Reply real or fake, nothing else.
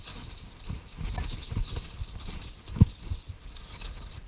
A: real